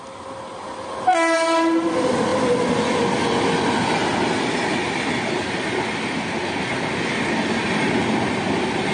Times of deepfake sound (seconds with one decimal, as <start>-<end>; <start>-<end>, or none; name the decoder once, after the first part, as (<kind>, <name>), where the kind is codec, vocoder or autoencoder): none